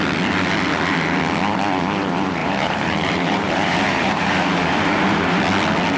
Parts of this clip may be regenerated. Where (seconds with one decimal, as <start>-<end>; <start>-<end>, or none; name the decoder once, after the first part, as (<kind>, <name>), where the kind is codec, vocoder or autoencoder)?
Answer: 2.4-5.4 (vocoder, BigVGAN v2)